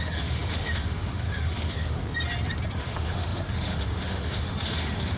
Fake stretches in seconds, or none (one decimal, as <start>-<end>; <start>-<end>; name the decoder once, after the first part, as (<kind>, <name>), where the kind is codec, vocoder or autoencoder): 0.0-2.0 (autoencoder, DAC-VAE); 2.8-5.2